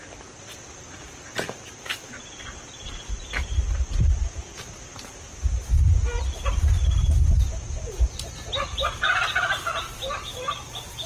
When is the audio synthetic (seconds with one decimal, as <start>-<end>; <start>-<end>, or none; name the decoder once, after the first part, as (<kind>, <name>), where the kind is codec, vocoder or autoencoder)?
none